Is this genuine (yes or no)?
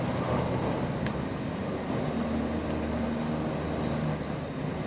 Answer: yes